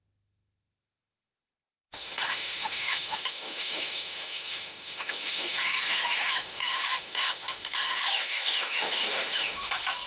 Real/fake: fake